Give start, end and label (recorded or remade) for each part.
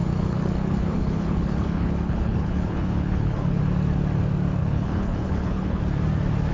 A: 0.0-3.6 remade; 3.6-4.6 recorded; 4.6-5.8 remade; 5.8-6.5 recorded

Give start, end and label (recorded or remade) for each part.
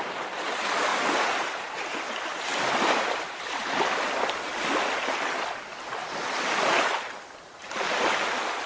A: 0.0-8.7 recorded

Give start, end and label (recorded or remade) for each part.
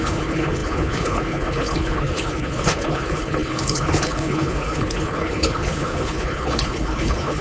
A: 0.0-7.4 remade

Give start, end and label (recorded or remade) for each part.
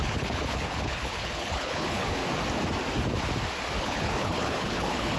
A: 0.0-2.2 remade; 2.2-3.8 recorded; 3.8-5.2 remade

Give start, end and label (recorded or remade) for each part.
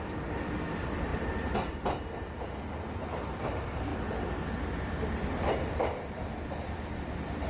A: 0.0-7.5 recorded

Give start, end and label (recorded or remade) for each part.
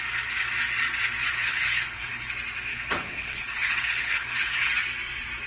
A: 0.0-1.2 recorded; 1.2-2.3 remade; 2.3-2.7 recorded; 2.7-4.7 remade; 4.7-5.5 recorded